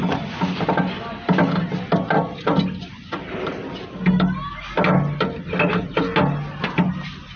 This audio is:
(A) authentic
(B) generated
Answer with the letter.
A